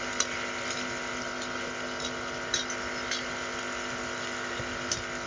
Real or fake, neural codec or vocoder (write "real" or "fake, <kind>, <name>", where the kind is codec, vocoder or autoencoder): real